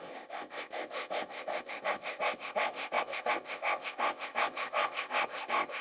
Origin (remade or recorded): remade